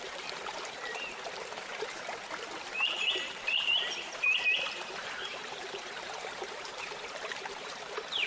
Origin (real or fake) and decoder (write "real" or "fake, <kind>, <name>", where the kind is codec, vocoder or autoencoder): fake, vocoder, BigVGAN v2